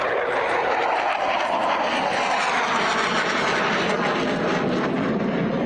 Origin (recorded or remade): recorded